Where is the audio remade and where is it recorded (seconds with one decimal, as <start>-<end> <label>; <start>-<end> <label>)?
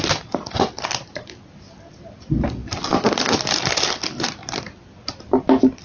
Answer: 0.0-5.8 recorded